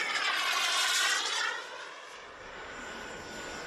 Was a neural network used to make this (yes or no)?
no